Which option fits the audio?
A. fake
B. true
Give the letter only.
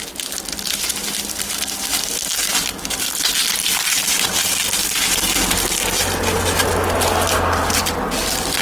B